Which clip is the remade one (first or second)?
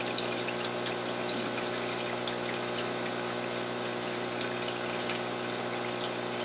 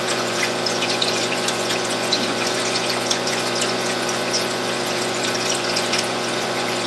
second